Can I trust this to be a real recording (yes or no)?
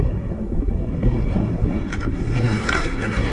no